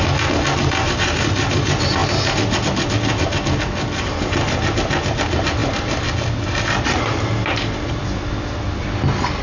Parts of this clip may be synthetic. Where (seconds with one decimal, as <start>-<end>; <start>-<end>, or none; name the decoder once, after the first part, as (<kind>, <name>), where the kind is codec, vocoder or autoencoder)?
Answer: none